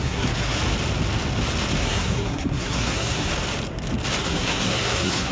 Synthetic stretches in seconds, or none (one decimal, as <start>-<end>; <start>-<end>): 0.0-0.6; 1.8-3.3; 4.2-5.3